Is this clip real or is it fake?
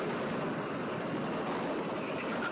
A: real